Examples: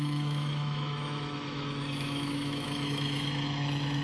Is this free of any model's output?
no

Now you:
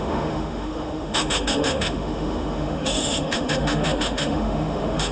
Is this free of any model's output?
no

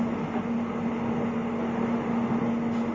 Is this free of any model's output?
yes